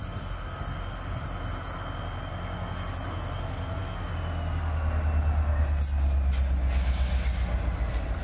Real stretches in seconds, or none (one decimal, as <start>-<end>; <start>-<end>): 0.0-8.2